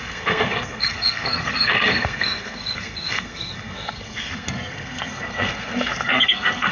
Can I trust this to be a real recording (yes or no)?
no